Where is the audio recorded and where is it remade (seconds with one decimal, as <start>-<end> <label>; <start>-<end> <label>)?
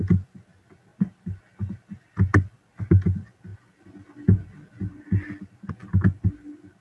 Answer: 0.0-6.8 recorded